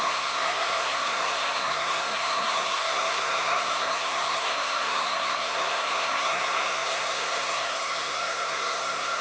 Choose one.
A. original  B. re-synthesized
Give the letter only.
B